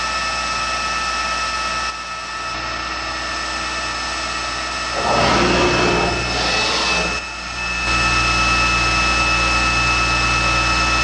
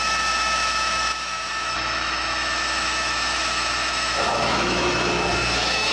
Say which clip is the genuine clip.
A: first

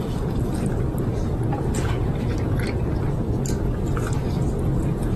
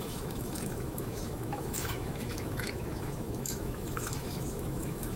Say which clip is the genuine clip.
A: first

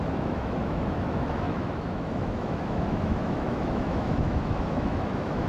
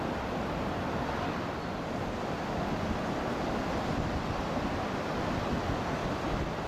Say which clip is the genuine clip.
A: second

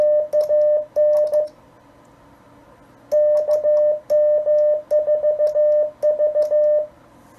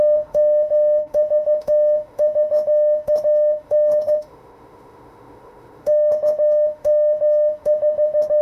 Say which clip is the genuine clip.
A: first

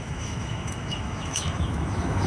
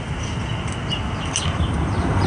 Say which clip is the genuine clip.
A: second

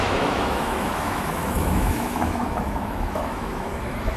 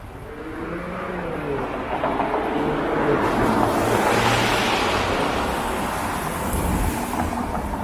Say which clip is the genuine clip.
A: second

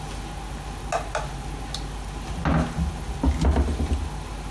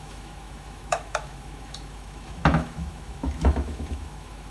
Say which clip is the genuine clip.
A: first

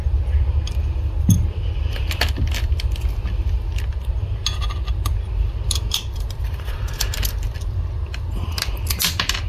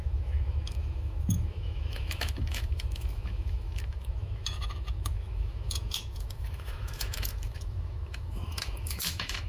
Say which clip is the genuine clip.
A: first